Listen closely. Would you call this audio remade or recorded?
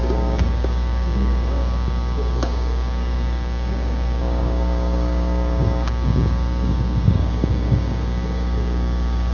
remade